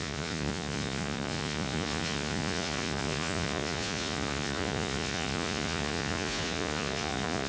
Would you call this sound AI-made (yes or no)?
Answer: yes